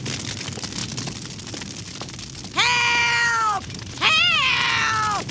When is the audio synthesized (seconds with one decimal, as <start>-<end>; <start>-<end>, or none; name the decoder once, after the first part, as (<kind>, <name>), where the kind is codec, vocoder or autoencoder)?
3.0-4.8 (vocoder, BigVGAN v2)